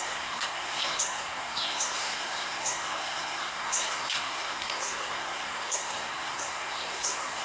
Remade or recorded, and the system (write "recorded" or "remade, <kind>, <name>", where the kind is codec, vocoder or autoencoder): remade, codec, SNAC